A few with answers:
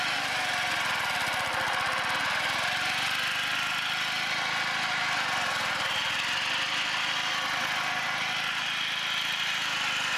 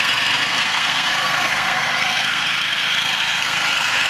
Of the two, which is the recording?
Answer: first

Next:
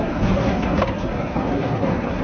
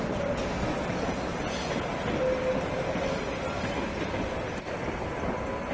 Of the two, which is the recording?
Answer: second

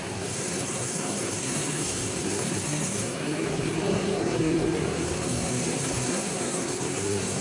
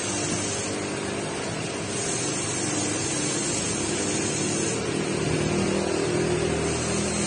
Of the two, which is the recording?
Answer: second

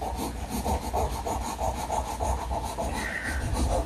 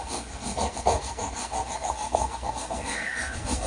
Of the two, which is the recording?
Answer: first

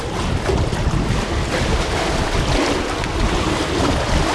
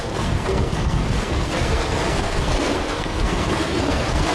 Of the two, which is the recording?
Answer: first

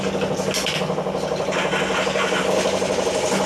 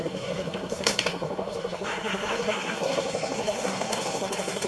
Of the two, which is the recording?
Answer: first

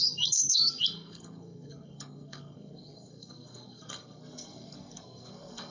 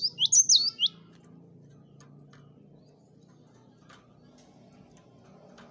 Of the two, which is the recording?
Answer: second